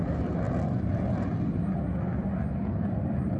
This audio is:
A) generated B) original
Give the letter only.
B